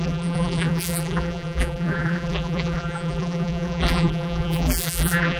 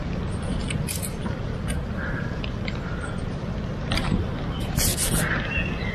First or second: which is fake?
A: first